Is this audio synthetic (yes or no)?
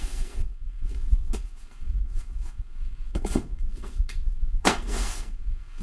yes